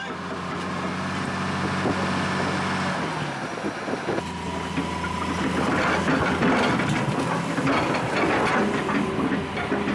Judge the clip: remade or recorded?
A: recorded